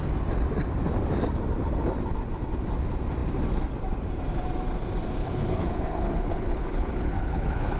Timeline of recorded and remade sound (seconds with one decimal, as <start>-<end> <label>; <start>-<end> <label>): 0.0-5.2 recorded; 5.2-7.8 remade